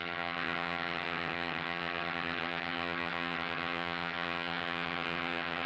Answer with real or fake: fake